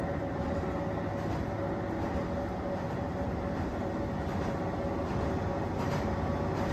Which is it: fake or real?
real